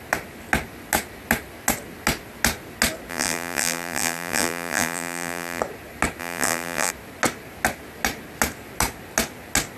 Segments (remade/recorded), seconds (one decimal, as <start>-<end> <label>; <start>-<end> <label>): 0.0-3.1 recorded; 3.1-5.6 remade; 5.6-6.2 recorded; 6.2-6.9 remade; 6.9-9.8 recorded